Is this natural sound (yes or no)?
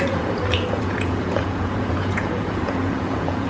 no